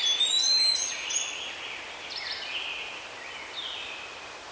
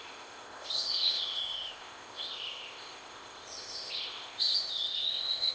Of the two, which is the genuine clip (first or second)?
first